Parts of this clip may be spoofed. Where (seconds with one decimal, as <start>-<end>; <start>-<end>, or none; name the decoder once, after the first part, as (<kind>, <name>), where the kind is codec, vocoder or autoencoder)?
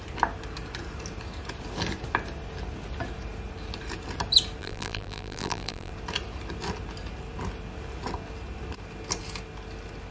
4.6-5.9 (vocoder, BigVGAN v2)